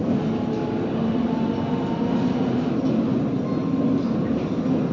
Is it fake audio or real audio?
real